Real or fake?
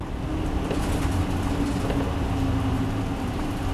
real